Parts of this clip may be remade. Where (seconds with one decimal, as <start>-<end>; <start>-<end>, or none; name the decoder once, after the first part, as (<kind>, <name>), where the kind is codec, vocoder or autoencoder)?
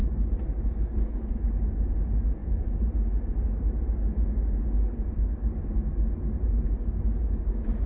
none